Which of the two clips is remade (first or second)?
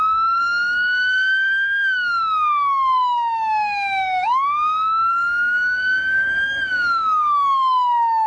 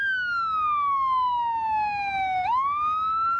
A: first